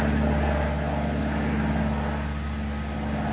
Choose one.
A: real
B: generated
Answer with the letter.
A